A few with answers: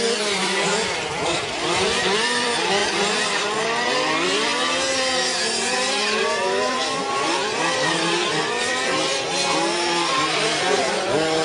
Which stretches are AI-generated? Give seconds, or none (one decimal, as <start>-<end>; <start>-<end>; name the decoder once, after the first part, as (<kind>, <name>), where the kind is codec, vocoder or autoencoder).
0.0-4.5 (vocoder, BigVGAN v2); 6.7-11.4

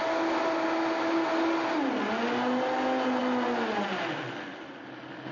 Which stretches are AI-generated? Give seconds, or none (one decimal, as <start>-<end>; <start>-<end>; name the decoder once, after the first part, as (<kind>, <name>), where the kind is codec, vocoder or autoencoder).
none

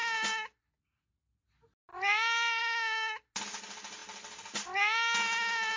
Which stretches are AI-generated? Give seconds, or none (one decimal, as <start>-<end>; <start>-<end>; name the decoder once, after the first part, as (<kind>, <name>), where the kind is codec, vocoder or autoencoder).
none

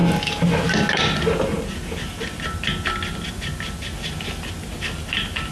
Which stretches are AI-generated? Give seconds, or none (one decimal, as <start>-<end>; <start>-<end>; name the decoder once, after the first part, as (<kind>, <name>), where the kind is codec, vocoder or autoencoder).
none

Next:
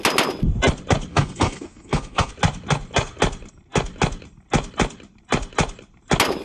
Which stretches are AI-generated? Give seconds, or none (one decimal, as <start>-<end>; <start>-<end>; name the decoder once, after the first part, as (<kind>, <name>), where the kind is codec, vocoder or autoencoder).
1.1-2.3 (codec, SNAC)

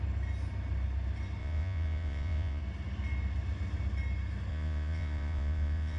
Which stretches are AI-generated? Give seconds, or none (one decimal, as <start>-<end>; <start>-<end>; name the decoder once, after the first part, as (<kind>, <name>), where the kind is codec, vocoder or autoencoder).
1.4-2.6 (vocoder, Vocos); 4.5-6.0